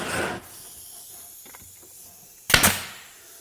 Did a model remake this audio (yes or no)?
no